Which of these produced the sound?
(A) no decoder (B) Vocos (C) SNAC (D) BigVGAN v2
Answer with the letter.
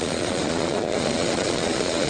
B